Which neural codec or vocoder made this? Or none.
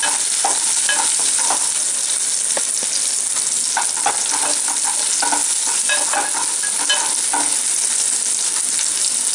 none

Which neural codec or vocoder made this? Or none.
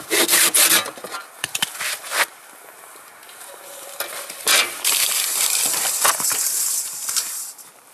vocoder, BigVGAN v2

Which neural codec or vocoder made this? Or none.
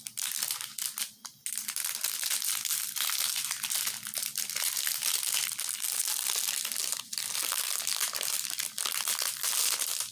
none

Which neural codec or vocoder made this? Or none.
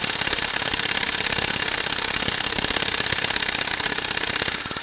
none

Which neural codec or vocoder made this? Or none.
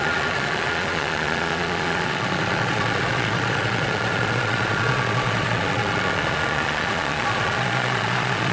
vocoder, Vocos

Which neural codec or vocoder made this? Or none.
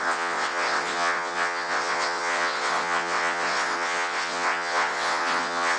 vocoder, WaveNeXt